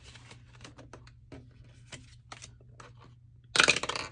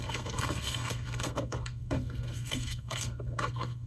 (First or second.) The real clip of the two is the first